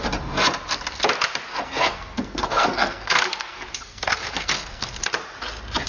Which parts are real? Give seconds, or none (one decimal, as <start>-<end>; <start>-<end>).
0.0-1.5; 5.0-5.9